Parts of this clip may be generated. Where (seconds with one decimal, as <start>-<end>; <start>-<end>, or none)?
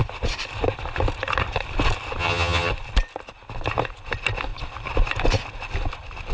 2.2-2.7